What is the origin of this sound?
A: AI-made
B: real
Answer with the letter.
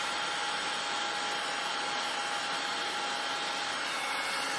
B